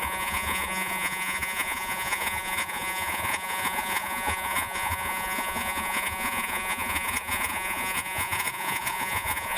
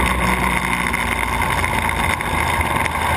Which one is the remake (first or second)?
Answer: first